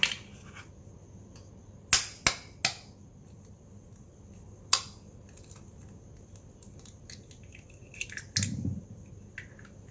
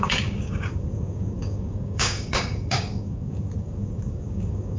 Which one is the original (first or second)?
first